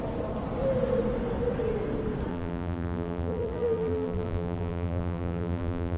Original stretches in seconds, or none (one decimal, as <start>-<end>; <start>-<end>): 0.0-2.3